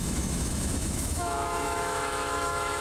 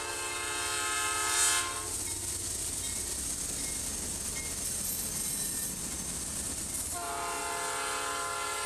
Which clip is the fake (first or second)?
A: first